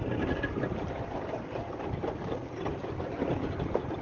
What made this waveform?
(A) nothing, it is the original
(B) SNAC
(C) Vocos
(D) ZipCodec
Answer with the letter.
A